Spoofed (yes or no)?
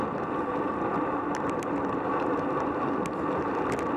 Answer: no